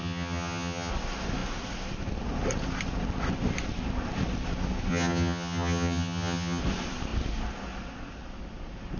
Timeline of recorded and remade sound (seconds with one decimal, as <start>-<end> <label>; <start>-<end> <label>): 0.0-0.9 remade; 0.9-4.9 recorded; 4.9-6.6 remade; 6.6-9.0 recorded